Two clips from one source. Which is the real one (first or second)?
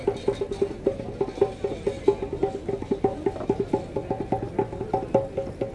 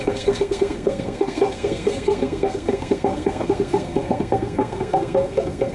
first